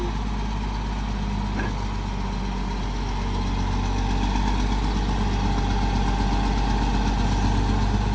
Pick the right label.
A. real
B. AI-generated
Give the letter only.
A